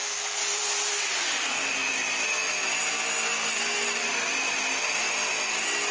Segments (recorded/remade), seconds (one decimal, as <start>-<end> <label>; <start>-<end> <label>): 0.0-1.3 remade; 1.3-5.9 recorded

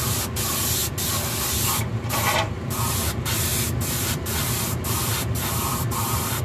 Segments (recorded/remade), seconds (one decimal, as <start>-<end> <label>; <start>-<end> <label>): 0.0-0.8 recorded; 0.8-2.8 remade; 2.8-3.5 recorded; 3.5-6.4 remade

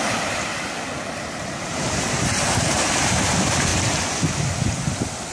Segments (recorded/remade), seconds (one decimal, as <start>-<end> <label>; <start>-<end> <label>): 0.0-0.5 remade; 0.5-1.2 recorded; 1.2-3.7 remade; 3.7-5.3 recorded

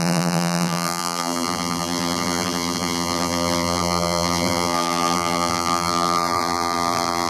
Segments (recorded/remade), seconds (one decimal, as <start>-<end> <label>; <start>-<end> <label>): 0.0-7.3 remade

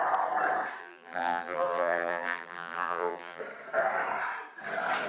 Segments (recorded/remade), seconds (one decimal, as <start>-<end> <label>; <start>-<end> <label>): 0.0-0.8 recorded; 0.8-3.4 remade; 3.4-5.1 recorded

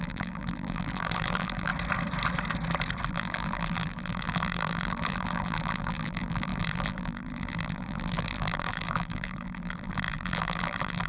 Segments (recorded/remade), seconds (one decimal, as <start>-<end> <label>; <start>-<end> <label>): 0.0-1.7 remade; 1.7-3.1 recorded; 3.1-11.1 remade

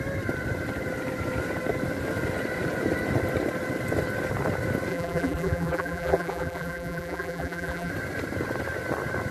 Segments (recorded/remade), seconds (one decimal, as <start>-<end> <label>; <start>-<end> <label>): 0.0-4.9 recorded; 4.9-7.9 remade; 7.9-9.3 recorded